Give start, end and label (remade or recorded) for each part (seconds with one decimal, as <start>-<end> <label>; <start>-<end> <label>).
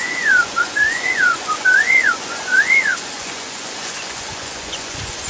0.0-5.3 remade